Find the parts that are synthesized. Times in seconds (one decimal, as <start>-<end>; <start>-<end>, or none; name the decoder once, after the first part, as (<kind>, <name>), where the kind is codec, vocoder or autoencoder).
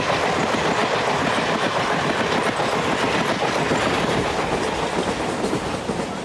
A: none